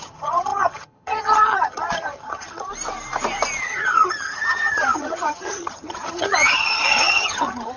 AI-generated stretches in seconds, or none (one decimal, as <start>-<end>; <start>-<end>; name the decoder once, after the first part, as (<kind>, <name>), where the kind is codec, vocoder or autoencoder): 0.0-2.7 (vocoder, HiFi-GAN); 3.6-7.8